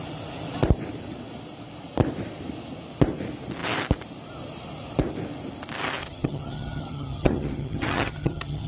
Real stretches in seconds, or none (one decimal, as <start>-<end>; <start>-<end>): 0.0-6.0

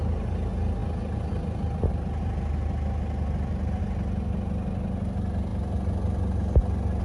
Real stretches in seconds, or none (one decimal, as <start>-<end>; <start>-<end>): 0.0-7.0

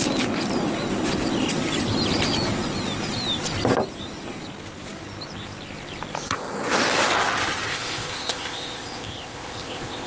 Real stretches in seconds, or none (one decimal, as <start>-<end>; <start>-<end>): 0.0-7.7